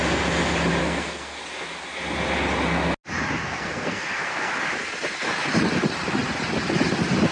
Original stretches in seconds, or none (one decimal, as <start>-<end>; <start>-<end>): 0.0-0.8; 1.4-3.4; 4.5-7.3